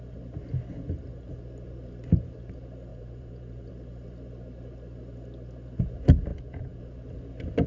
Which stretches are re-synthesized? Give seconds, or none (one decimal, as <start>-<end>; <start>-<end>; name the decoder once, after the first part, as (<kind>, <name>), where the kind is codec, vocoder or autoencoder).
2.9-3.7 (vocoder, Vocos); 6.3-6.8